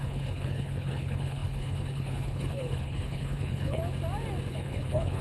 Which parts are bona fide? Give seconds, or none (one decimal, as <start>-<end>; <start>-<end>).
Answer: 3.8-4.5

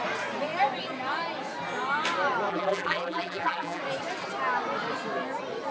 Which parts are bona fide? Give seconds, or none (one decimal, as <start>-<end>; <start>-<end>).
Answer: 0.0-2.5; 3.8-5.7